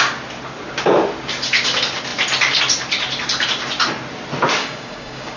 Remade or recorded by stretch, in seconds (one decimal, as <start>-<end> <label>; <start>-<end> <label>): 0.0-4.6 recorded; 4.6-5.4 remade